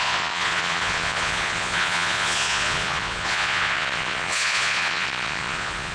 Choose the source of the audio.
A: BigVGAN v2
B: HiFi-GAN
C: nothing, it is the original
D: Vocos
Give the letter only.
D